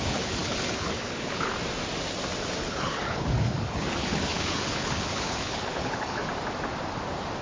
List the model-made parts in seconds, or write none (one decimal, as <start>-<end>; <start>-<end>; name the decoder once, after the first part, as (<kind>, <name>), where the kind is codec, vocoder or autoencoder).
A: 0.0-1.5 (codec, HILCodec); 2.7-6.2